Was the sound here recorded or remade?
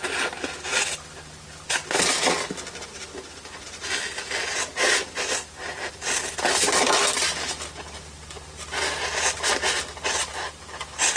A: recorded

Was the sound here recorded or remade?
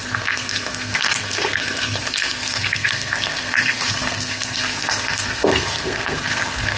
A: remade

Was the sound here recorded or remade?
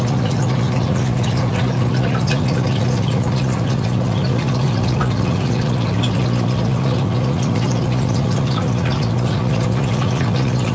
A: remade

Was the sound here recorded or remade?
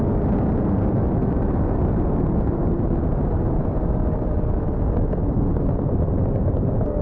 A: recorded